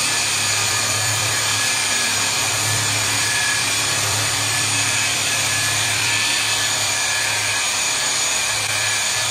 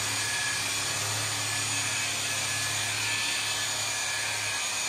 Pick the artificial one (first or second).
first